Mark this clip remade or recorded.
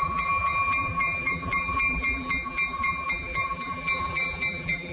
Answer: remade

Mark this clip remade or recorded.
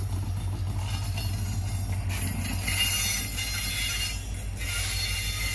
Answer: recorded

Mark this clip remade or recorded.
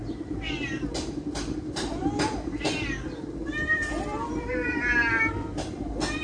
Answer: remade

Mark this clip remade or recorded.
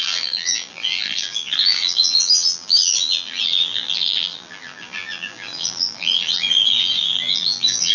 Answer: remade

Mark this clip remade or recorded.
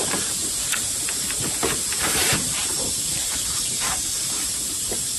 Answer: remade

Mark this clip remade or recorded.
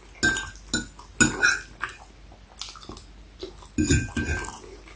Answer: recorded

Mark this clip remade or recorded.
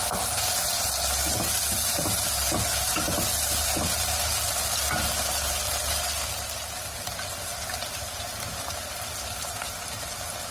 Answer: recorded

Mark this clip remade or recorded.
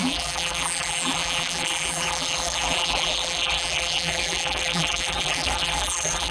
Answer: remade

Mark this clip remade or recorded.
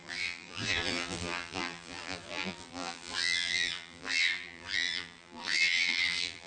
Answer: remade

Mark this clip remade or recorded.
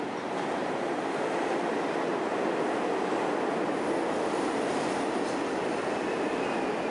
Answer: recorded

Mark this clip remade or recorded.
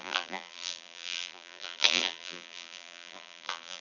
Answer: remade